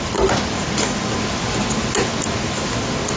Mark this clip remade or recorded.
recorded